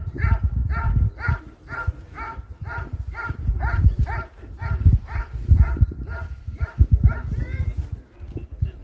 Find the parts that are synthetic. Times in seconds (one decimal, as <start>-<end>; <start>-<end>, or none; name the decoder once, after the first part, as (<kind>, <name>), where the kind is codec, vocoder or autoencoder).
none